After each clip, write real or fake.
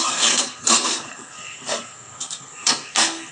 fake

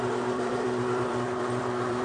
fake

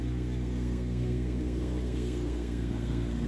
fake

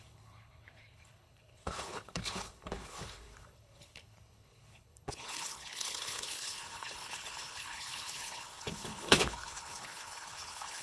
fake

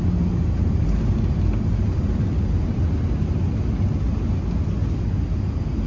real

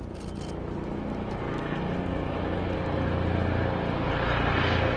real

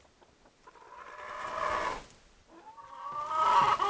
real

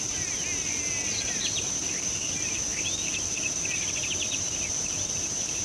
fake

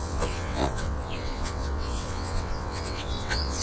fake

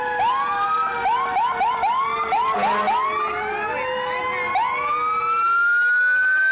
real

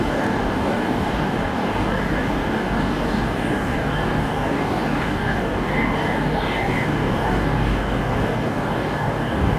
fake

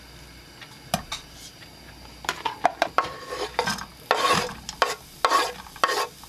fake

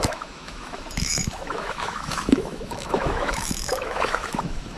fake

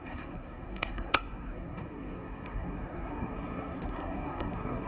fake